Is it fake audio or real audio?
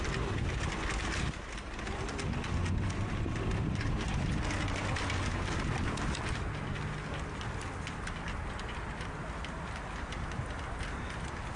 real